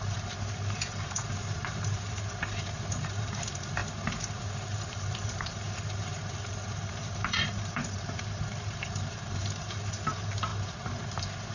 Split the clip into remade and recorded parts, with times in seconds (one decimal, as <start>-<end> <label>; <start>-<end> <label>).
0.0-11.5 remade